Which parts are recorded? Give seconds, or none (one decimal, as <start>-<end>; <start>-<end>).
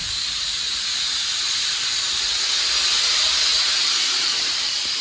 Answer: 0.0-5.0